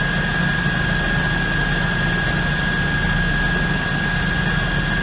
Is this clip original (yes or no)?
yes